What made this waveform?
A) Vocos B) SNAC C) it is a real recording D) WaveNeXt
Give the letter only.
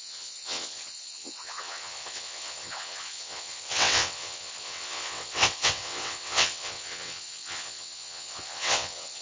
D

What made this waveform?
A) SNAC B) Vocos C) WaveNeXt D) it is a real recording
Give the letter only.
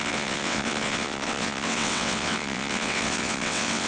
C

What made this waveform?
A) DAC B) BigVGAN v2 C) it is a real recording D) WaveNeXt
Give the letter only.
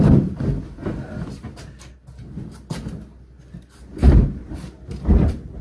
C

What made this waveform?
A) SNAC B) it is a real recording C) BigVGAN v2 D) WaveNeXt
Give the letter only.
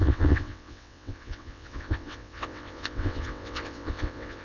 D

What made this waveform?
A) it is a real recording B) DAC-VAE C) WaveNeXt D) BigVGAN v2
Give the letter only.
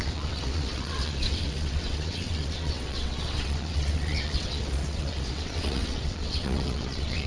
C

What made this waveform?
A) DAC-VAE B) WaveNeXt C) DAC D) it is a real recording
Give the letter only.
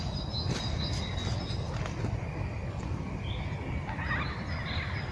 D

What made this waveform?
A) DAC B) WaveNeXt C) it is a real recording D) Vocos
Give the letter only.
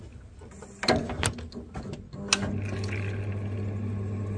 C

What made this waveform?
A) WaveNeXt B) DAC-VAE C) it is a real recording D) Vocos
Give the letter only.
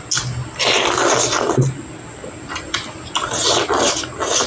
C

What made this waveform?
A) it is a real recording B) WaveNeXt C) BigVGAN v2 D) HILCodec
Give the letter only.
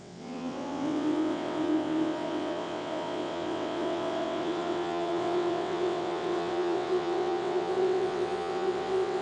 B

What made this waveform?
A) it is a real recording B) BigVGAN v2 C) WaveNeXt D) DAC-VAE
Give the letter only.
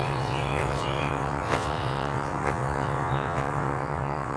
C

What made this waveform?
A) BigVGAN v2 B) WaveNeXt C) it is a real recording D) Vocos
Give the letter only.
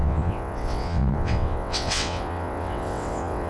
B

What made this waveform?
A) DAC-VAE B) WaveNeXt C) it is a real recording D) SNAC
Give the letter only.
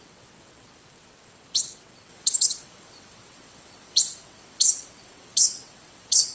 B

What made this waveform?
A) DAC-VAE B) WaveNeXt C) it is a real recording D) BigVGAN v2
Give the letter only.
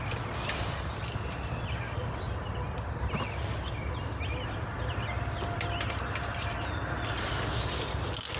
C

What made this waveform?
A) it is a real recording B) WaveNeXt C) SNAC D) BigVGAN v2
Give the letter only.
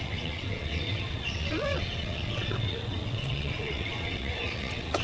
B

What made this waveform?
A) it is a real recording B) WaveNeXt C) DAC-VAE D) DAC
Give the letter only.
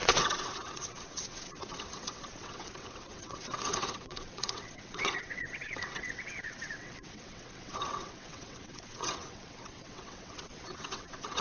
B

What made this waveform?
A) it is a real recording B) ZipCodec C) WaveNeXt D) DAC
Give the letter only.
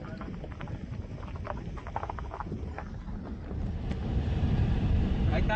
A